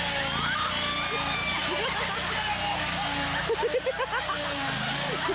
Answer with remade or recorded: recorded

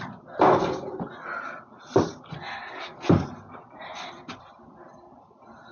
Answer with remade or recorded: recorded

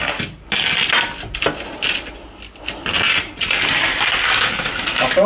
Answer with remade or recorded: recorded